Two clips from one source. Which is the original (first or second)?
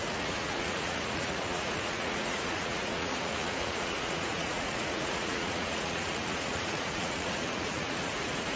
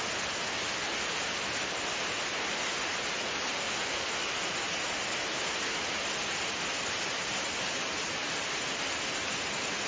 second